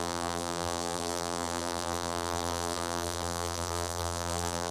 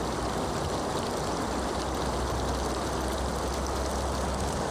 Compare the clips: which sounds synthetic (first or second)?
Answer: first